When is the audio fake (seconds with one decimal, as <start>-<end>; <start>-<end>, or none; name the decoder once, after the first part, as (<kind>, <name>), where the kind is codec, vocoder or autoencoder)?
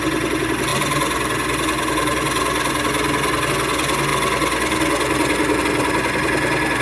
none